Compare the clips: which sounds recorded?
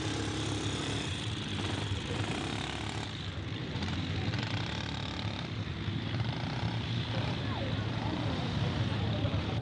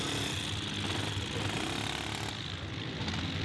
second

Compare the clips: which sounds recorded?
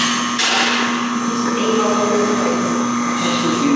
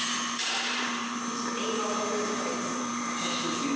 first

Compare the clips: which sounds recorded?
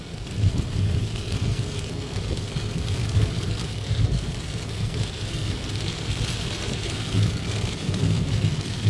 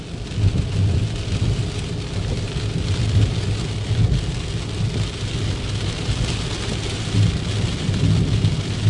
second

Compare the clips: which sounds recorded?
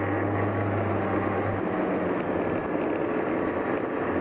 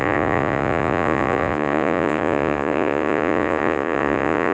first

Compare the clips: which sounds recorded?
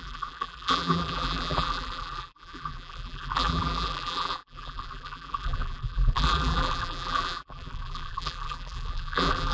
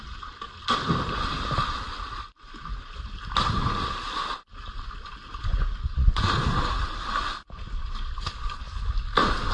second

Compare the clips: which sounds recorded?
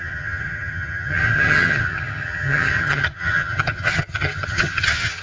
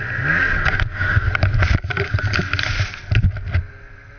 second